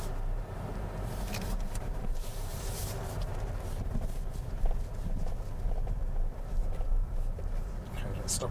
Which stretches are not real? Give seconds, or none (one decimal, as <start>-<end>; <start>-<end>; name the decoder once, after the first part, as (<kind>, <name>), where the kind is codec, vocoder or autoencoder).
0.7-2.8 (vocoder, BigVGAN v2); 6.6-7.7

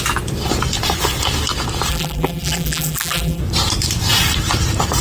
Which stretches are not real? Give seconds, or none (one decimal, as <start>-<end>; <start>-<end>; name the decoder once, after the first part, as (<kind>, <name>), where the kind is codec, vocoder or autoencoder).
1.9-3.4 (vocoder, BigVGAN v2)

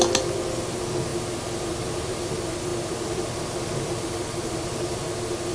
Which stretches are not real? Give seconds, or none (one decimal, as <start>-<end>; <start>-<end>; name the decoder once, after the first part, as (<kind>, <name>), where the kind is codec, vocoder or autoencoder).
1.1-2.3 (vocoder, BigVGAN v2); 2.7-5.0

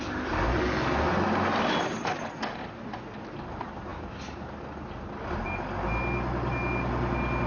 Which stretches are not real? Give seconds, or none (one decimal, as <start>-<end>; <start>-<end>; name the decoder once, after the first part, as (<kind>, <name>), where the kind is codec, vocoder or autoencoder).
3.9-4.6 (vocoder, BigVGAN v2)

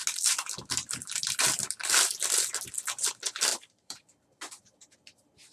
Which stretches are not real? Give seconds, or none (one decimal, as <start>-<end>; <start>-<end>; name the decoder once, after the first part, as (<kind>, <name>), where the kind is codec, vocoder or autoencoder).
3.5-4.0 (vocoder, BigVGAN v2)

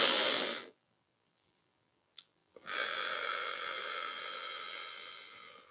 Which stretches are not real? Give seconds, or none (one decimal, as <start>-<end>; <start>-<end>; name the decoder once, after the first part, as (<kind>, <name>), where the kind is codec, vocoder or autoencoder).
0.0-5.7 (vocoder, BigVGAN v2)

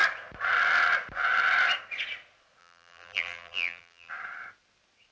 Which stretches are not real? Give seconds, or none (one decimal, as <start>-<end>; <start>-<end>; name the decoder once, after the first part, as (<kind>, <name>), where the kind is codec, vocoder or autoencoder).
2.6-4.1 (vocoder, BigVGAN v2)